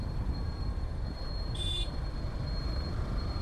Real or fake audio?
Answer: fake